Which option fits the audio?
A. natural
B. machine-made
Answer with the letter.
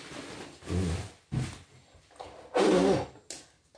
A